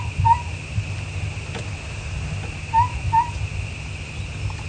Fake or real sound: real